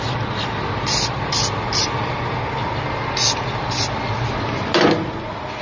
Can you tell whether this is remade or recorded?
recorded